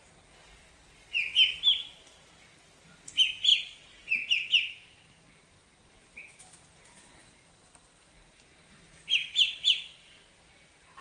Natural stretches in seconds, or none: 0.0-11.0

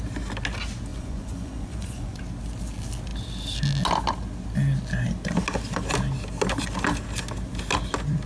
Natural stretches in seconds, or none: 0.0-0.9; 2.2-8.3

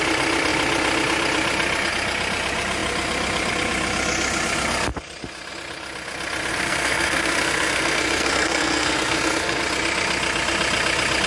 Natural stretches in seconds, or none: 0.0-6.5; 9.6-11.3

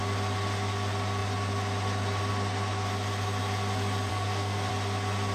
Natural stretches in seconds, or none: 0.0-4.1; 4.7-5.3

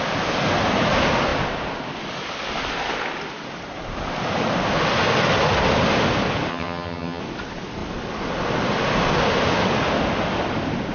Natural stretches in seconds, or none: 0.0-6.5; 7.2-10.9